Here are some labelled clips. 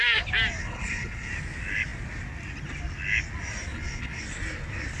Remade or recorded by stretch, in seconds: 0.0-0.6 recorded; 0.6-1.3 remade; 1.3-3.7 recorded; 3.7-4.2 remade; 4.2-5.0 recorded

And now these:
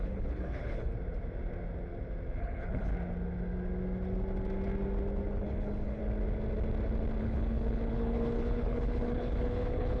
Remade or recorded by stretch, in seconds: 0.0-0.9 remade; 0.9-2.4 recorded; 2.4-2.9 remade; 2.9-5.4 recorded; 5.4-6.0 remade; 6.0-7.2 recorded; 7.2-10.0 remade

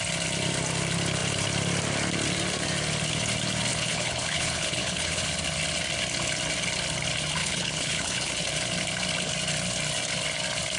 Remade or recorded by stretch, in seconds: 0.0-3.7 recorded; 3.7-5.2 remade; 5.2-7.4 recorded; 7.4-8.3 remade; 8.3-10.8 recorded